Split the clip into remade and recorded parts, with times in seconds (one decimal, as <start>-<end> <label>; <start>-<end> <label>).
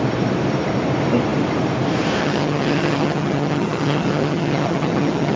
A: 0.0-2.2 recorded; 2.2-5.4 remade